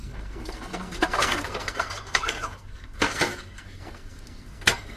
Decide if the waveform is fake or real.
fake